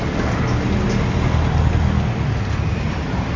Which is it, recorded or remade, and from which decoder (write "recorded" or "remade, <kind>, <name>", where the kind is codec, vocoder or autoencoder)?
recorded